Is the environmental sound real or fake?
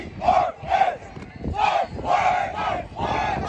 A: real